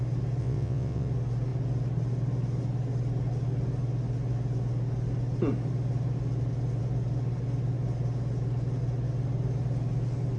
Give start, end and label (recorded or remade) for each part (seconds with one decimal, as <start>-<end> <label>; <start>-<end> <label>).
0.0-0.4 recorded; 0.4-1.1 remade; 1.1-10.4 recorded